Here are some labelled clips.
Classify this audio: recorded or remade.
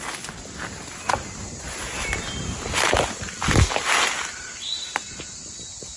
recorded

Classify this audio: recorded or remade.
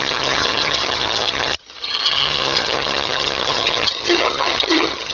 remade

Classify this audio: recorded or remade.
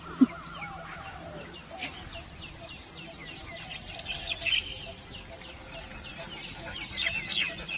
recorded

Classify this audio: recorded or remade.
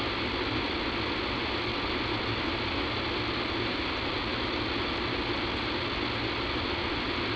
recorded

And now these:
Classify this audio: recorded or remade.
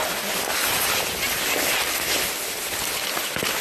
recorded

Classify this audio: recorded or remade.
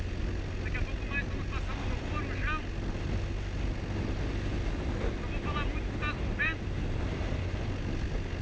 recorded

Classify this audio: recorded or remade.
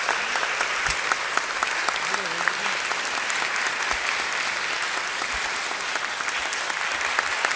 recorded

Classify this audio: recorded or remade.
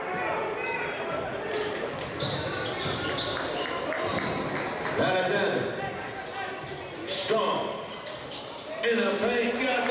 recorded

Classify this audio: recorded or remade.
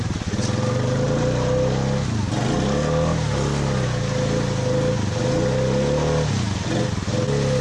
recorded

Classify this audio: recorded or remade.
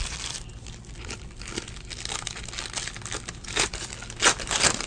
recorded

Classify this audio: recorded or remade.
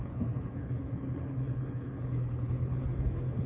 remade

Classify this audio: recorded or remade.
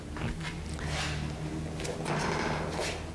recorded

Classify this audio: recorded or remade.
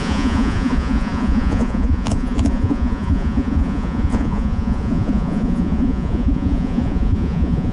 remade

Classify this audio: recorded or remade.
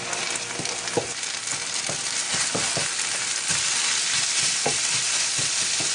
recorded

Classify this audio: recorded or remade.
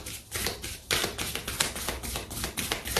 recorded